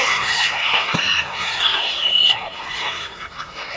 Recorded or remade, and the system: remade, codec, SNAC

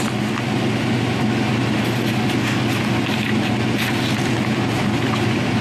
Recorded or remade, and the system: recorded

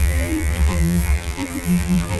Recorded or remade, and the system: remade, vocoder, BigVGAN v2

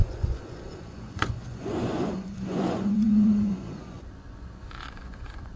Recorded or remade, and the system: remade, vocoder, Vocos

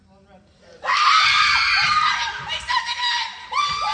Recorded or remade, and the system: recorded